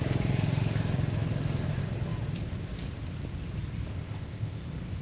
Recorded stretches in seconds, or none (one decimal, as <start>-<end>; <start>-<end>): 0.0-3.9; 4.6-5.0